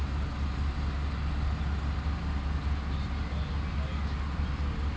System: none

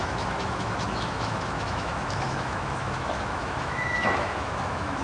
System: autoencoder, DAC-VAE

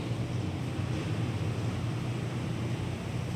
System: none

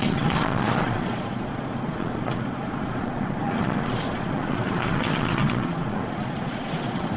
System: vocoder, Vocos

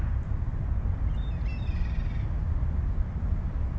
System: vocoder, BigVGAN v2